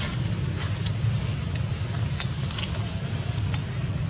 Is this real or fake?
real